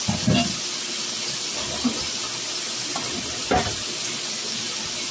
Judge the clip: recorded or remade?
recorded